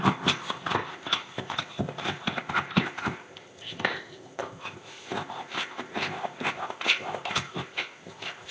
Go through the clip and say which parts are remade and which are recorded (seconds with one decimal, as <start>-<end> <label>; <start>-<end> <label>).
0.0-8.5 remade